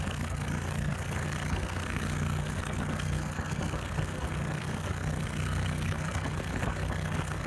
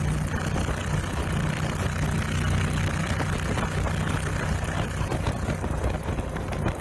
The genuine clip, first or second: second